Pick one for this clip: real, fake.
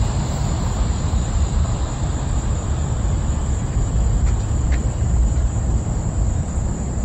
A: fake